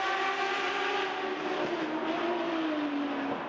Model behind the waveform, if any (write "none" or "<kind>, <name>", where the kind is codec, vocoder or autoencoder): none